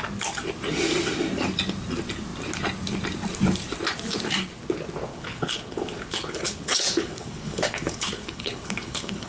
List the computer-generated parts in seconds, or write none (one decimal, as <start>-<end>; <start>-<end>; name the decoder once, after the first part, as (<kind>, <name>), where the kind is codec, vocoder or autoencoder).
5.1-9.3 (codec, HILCodec)